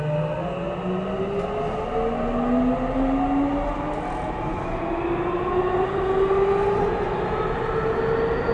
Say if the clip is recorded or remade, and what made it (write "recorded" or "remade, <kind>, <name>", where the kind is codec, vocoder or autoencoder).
recorded